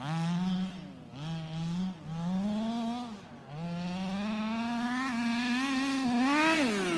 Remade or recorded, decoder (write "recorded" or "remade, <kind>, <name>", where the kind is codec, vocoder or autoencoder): recorded